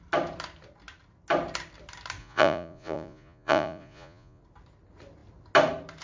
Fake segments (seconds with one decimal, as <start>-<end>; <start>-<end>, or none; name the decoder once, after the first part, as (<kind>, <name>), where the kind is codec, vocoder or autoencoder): 2.2-4.4 (vocoder, Vocos)